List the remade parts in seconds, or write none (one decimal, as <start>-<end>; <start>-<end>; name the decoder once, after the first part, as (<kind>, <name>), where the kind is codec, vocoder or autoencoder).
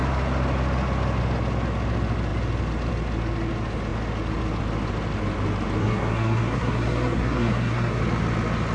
5.8-8.0 (codec, SNAC)